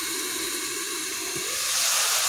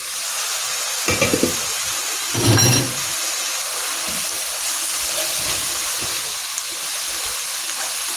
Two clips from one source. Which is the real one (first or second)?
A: second